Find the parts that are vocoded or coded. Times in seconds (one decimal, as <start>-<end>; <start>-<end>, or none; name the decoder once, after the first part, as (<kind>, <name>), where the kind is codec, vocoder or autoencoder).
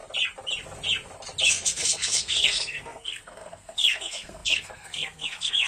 1.5-5.7 (codec, SNAC)